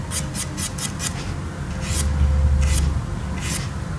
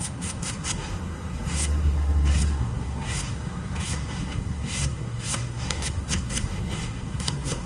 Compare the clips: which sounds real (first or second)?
first